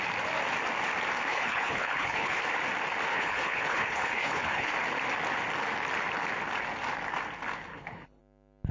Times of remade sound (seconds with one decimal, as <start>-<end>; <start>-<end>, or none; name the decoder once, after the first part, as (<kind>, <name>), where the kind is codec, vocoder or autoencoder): 1.3-2.4 (codec, HILCodec); 3.1-4.7; 7.7-8.2